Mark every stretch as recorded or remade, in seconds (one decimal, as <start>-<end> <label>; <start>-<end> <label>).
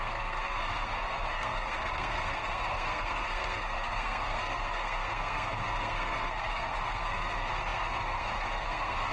0.0-9.1 remade